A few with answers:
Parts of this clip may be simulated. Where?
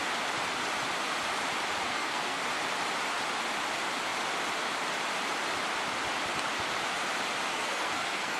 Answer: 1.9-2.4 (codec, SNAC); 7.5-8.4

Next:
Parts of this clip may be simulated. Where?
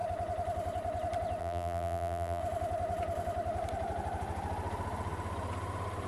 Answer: 1.4-2.4 (vocoder, BigVGAN v2)